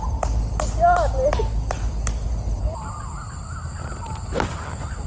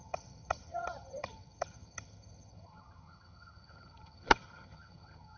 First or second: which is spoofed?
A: second